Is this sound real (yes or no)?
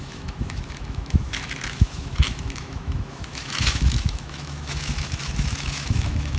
no